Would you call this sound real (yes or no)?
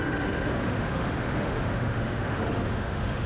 no